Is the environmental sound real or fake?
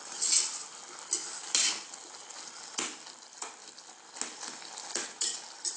real